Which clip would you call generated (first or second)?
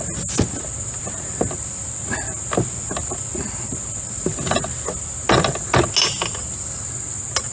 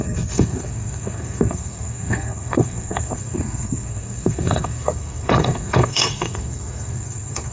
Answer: second